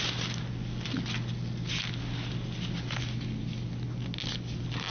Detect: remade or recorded recorded